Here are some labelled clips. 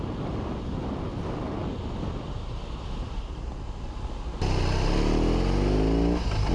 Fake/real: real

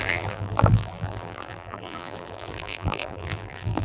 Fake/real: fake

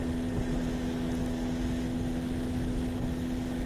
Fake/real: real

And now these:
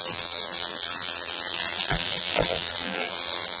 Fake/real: fake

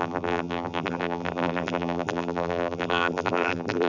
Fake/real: fake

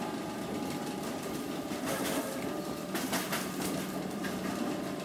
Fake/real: fake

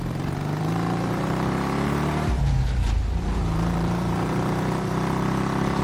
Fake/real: fake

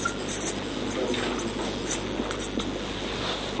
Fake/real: real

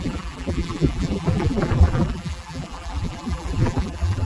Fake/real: fake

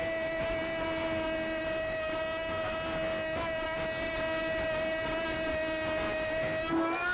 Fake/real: real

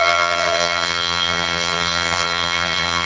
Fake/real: fake